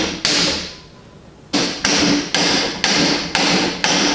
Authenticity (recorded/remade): recorded